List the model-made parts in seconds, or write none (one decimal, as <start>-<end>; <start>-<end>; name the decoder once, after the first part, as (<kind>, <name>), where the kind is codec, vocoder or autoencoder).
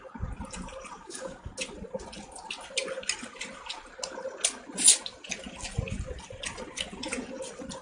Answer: 1.0-1.5 (codec, DAC)